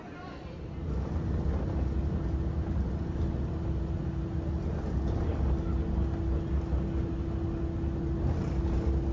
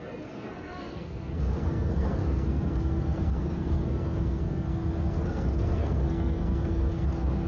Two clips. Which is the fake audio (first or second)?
second